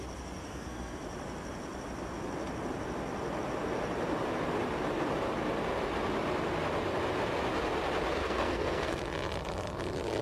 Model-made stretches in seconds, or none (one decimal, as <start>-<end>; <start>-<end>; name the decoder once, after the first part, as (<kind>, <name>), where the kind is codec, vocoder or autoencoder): 0.5-1.0 (codec, SNAC); 8.2-9.0